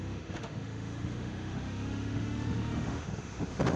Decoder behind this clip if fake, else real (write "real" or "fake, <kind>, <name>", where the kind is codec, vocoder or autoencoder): fake, autoencoder, DAC-VAE